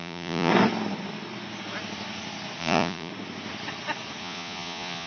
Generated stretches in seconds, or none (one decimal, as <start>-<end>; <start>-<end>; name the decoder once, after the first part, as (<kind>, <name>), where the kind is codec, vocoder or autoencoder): 0.0-0.5 (vocoder, Vocos); 2.6-3.1; 4.2-5.1